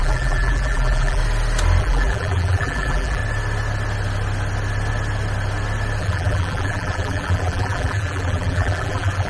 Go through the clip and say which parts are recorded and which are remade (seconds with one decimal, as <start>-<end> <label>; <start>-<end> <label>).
0.0-1.2 remade; 1.2-1.8 recorded; 1.8-3.2 remade; 3.2-6.0 recorded; 6.0-9.3 remade